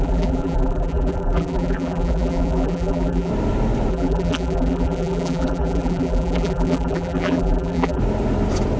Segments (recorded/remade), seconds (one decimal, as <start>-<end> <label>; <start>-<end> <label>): 0.0-3.3 remade; 3.3-3.9 recorded; 3.9-8.0 remade; 8.0-8.8 recorded